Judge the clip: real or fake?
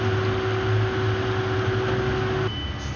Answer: real